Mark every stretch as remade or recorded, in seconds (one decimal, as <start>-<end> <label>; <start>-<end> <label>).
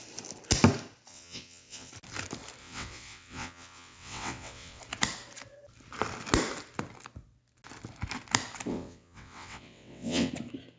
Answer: 0.0-1.1 recorded; 1.1-1.9 remade; 1.9-2.6 recorded; 2.6-4.8 remade; 4.8-8.7 recorded; 8.7-10.3 remade; 10.3-10.8 recorded